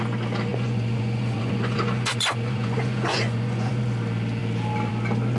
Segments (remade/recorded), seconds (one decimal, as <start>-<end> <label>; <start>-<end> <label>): 0.0-0.5 recorded; 0.5-3.7 remade; 3.7-5.4 recorded